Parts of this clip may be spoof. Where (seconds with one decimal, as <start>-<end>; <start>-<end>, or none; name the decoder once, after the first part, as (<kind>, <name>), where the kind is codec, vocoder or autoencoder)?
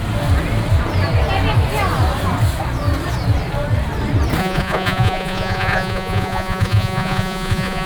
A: 4.4-7.9 (vocoder, Vocos)